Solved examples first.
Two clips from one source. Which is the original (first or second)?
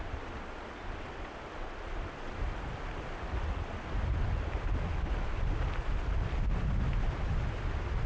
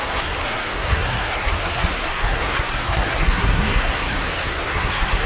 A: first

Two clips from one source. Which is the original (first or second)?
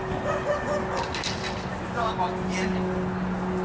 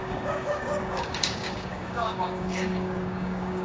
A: first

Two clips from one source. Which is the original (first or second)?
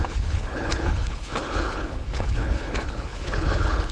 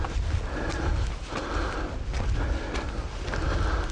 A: second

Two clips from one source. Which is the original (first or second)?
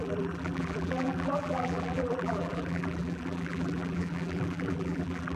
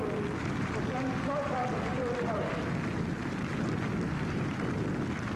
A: second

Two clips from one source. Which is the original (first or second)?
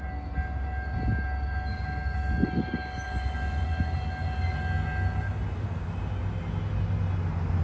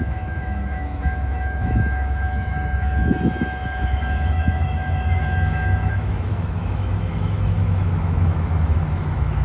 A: first